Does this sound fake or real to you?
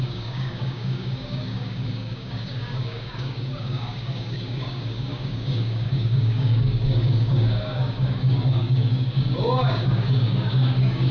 fake